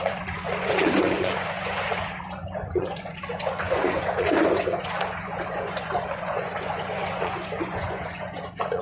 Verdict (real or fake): fake